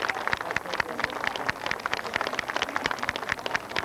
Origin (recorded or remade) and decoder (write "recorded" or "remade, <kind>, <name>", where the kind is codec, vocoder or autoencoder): recorded